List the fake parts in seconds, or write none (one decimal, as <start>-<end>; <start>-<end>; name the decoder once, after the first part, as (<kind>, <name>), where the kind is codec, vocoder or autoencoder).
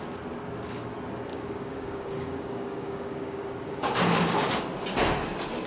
1.3-4.6 (codec, DAC)